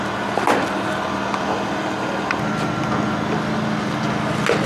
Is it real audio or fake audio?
real